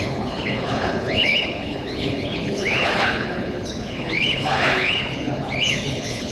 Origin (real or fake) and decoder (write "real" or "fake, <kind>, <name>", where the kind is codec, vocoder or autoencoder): fake, codec, HILCodec